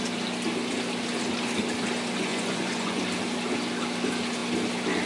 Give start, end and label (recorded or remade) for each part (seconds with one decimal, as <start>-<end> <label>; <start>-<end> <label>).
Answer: 0.0-2.3 recorded; 2.3-3.0 remade; 3.0-5.1 recorded